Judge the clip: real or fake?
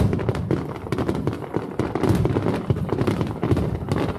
real